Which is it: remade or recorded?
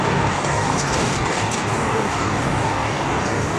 remade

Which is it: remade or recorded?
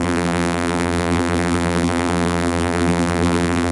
remade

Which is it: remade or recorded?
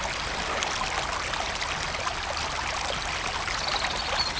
recorded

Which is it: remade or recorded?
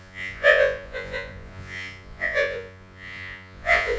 remade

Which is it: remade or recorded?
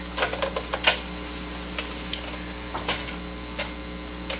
recorded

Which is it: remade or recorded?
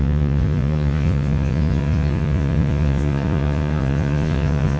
remade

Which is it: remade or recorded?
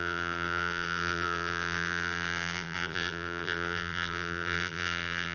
remade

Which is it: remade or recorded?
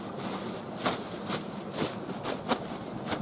recorded